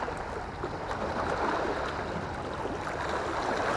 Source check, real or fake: real